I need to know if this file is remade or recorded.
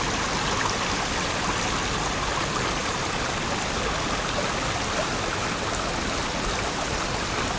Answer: recorded